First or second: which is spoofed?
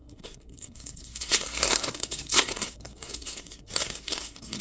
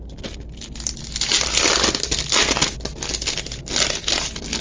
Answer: first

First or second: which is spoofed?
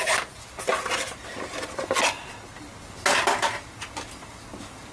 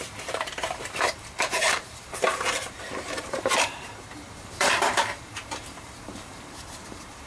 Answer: second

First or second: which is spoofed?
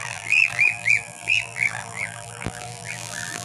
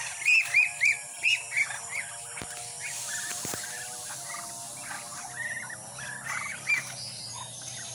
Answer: first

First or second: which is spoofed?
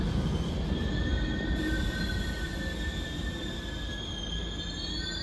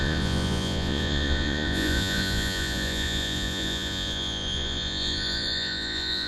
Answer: second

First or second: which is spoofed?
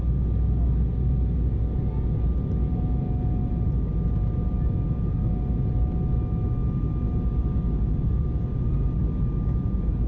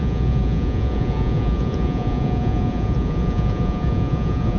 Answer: second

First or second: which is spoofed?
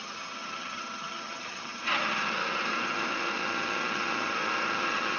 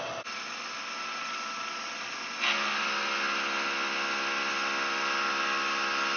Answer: first